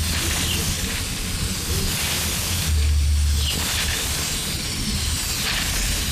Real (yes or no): yes